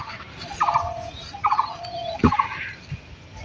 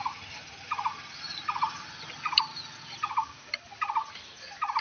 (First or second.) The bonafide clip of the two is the second